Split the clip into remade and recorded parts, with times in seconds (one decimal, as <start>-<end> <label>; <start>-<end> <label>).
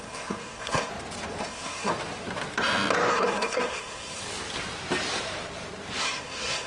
0.0-0.9 remade; 0.9-1.4 recorded; 1.4-1.9 remade; 1.9-3.1 recorded; 3.1-4.2 remade; 4.2-6.0 recorded; 6.0-6.7 remade